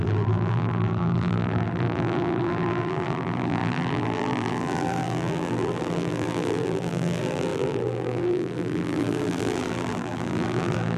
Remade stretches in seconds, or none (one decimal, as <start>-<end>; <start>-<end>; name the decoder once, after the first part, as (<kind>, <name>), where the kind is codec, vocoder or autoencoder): 0.0-11.0 (vocoder, BigVGAN v2)

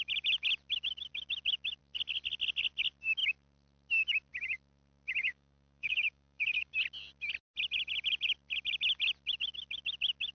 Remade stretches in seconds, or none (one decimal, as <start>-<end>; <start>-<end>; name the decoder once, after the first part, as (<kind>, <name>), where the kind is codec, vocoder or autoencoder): 5.2-6.7 (codec, DAC)